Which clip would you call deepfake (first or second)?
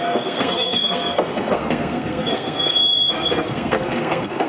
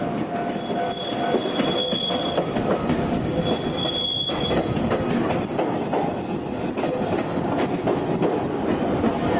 first